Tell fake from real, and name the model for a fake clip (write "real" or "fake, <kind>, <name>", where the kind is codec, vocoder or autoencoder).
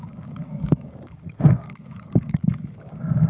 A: fake, codec, DAC